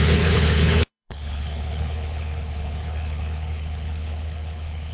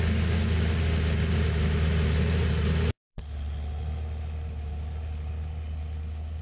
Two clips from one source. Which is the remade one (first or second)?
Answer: first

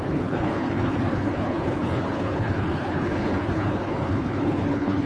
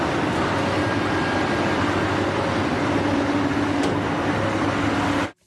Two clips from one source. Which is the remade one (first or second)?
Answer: first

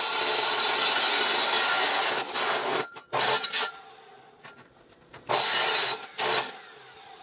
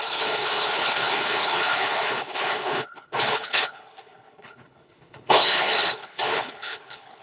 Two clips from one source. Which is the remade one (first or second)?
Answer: second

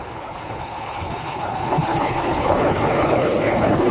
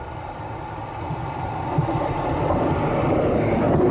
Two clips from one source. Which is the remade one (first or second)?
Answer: first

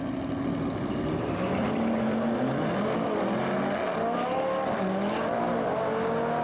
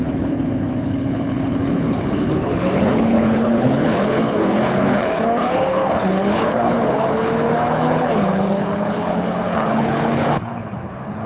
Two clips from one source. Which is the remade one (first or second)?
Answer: second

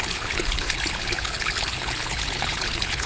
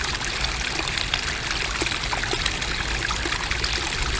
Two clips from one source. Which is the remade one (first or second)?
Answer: first